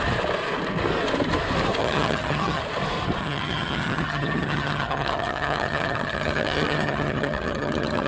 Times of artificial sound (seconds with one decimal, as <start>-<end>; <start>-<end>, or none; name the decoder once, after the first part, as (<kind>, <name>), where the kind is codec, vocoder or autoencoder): 1.8-2.6 (vocoder, HiFi-GAN); 3.2-8.1